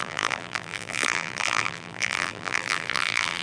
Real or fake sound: fake